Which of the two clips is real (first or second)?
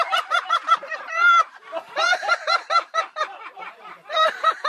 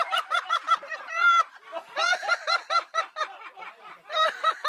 second